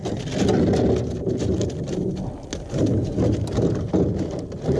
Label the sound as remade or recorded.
recorded